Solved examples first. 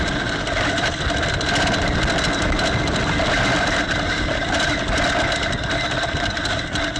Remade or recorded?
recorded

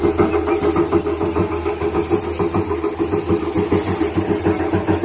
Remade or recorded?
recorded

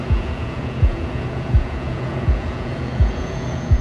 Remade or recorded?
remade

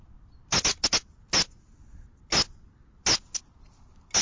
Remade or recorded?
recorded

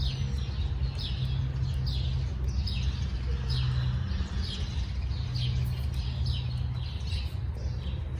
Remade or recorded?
recorded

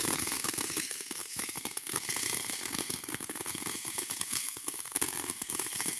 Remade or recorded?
remade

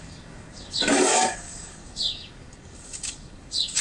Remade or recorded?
remade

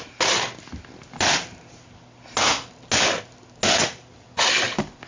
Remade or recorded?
recorded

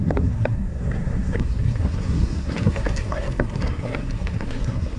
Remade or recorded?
remade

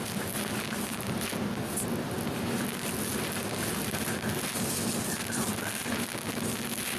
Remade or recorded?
recorded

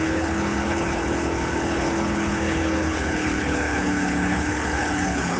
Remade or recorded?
remade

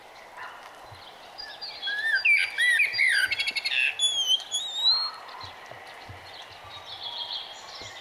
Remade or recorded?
recorded